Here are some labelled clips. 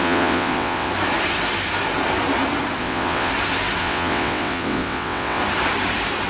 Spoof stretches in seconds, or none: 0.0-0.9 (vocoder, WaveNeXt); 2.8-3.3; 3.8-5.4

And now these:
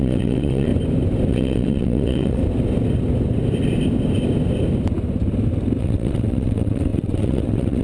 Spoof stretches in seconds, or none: 0.0-0.7 (vocoder, WaveNeXt); 1.3-2.4; 5.8-7.8

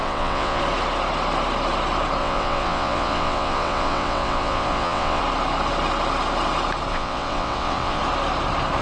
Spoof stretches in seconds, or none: 0.0-0.6 (vocoder, WaveNeXt); 2.2-5.2; 6.9-8.0

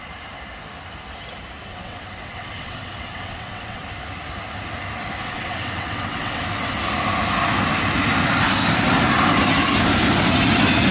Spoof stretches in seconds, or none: 1.7-3.8 (vocoder, WaveNeXt); 5.2-6.4

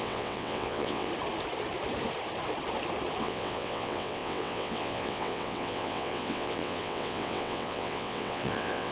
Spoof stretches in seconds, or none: 0.0-1.1 (vocoder, WaveNeXt); 3.2-8.9

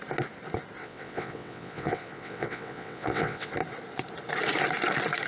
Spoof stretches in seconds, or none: 0.8-3.5 (vocoder, WaveNeXt)

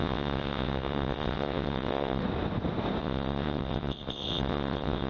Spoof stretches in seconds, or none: 0.0-2.2 (vocoder, WaveNeXt); 3.0-5.1

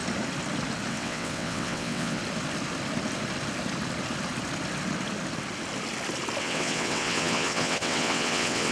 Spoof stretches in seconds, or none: 0.9-2.2 (vocoder, WaveNeXt); 6.4-8.7